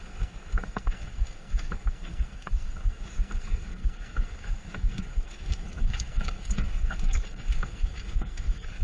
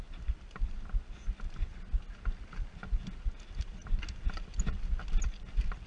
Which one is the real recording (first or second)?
second